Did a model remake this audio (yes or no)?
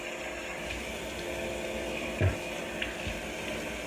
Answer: no